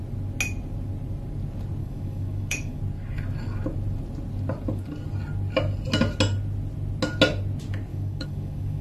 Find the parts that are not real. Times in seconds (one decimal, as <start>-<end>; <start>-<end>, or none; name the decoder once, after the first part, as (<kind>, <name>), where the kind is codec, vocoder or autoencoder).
1.8-2.8 (codec, DAC); 7.9-8.8